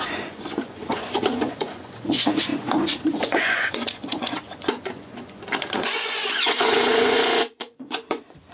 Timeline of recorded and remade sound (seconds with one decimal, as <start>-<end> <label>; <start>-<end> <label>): 0.0-8.5 remade